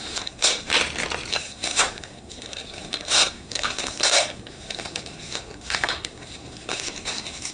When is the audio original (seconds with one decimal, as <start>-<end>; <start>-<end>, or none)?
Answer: 0.7-1.3